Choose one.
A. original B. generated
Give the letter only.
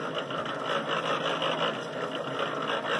A